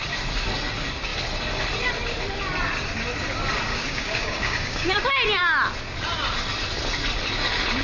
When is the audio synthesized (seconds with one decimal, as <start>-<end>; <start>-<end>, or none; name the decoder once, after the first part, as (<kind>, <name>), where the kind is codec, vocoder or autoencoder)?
3.7-5.0 (codec, DAC)